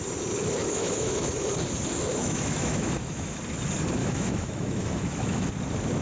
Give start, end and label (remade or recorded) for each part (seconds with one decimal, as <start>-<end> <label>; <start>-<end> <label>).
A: 0.0-0.6 recorded; 0.6-1.3 remade; 1.3-2.1 recorded; 2.1-3.4 remade; 3.4-4.0 recorded; 4.0-5.5 remade; 5.5-6.0 recorded